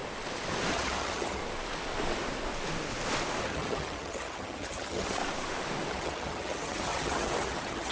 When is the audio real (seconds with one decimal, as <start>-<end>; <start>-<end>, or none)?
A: 0.0-0.7; 1.4-3.4; 5.2-5.9